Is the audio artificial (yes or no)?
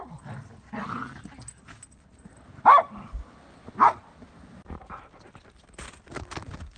no